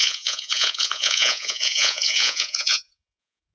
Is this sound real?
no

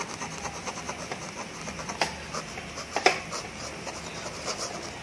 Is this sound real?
yes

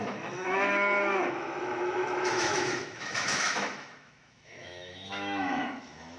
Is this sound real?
no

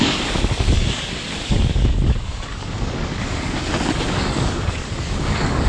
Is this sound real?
no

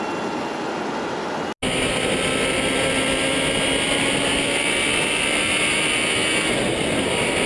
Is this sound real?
yes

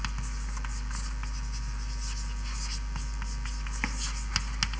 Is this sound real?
yes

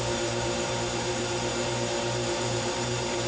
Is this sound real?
no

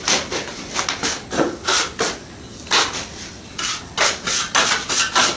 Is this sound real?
yes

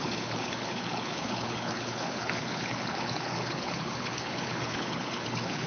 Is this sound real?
no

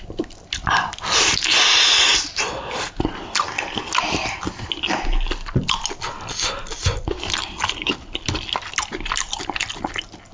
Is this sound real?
yes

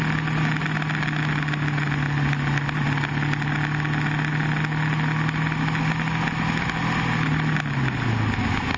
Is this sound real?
yes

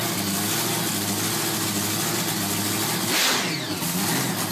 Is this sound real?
yes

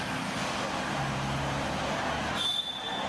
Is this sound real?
yes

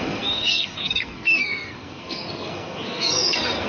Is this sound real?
no